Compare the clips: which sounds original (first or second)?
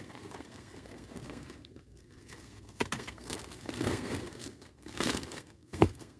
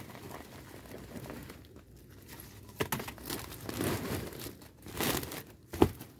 second